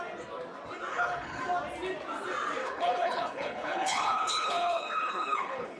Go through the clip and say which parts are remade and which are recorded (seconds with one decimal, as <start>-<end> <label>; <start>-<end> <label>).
0.0-0.9 recorded; 0.9-1.4 remade; 1.4-2.6 recorded; 2.6-5.8 remade